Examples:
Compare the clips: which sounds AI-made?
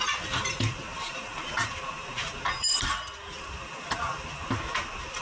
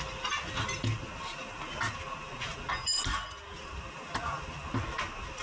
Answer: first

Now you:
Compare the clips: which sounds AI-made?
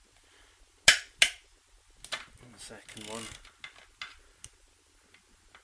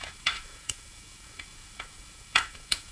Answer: second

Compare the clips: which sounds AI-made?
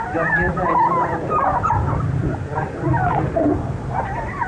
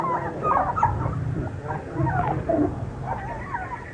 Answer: first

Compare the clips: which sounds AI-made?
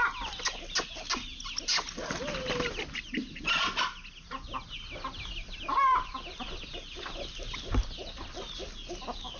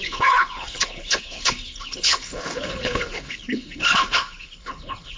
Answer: second